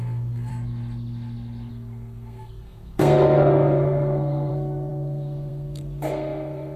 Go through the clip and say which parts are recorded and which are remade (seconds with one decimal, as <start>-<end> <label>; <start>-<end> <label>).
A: 0.0-0.5 remade; 0.5-1.7 recorded; 1.7-6.8 remade